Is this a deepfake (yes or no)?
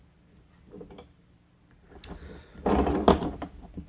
no